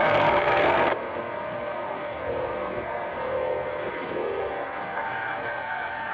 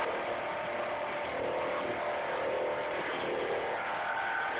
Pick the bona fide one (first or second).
second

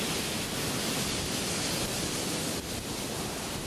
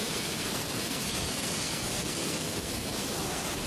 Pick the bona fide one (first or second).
first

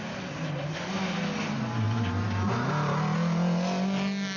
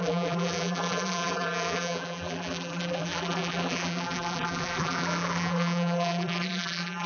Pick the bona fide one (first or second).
first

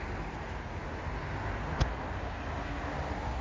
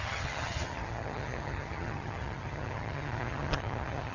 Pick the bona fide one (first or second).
first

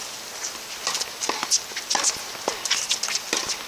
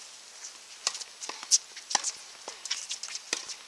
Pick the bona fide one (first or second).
second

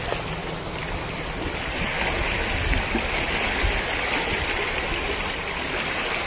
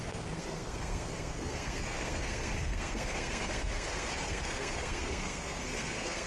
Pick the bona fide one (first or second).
first